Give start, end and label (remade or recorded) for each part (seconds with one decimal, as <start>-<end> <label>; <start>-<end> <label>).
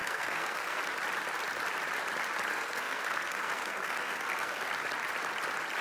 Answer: 0.0-0.8 remade; 0.8-2.5 recorded; 2.5-4.7 remade; 4.7-5.8 recorded